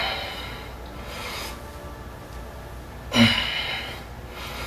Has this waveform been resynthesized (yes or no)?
no